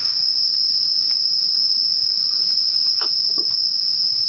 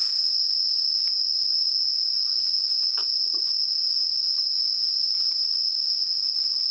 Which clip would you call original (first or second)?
second